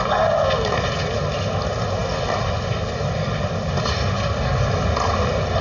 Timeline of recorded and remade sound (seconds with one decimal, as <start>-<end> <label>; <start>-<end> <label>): 0.0-5.6 recorded